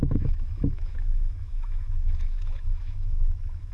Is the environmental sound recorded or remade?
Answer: remade